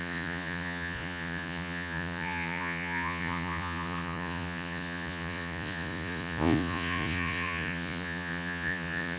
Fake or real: fake